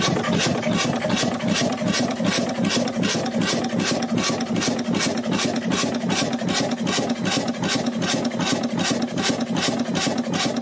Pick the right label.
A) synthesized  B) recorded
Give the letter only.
B